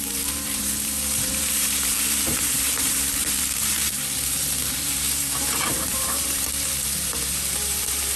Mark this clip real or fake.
fake